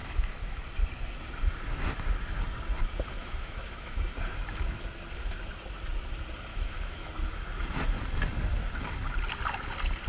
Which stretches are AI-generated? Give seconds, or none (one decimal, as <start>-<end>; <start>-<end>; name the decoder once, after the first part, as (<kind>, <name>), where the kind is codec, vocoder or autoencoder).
0.0-0.6 (autoencoder, DAC-VAE); 3.2-4.0; 6.5-7.1